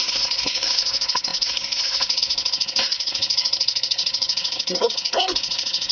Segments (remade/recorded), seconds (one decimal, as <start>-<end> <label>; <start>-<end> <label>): 0.0-5.9 remade